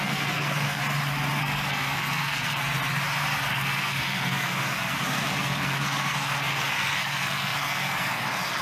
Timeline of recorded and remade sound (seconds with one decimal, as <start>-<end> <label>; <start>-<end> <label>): 0.0-0.8 remade; 0.8-1.4 recorded; 1.4-2.6 remade; 2.6-3.5 recorded; 3.5-8.6 remade